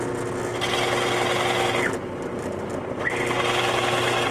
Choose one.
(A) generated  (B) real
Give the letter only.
B